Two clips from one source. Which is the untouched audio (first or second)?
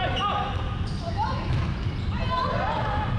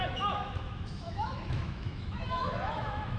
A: first